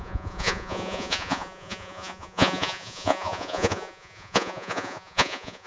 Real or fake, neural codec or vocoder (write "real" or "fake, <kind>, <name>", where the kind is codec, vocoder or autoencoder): fake, vocoder, Vocos